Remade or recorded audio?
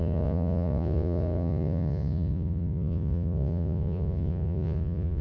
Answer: remade